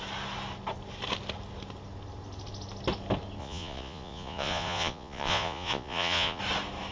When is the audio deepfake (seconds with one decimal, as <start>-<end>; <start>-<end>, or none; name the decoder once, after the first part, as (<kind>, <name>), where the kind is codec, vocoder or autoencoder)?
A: 3.4-6.4 (vocoder, Vocos)